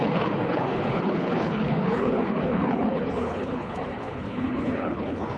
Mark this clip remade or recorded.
remade